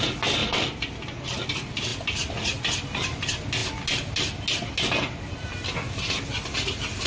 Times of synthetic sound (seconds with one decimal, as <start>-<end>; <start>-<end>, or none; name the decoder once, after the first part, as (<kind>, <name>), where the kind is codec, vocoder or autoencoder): 0.4-1.5 (vocoder, BigVGAN v2); 1.9-2.6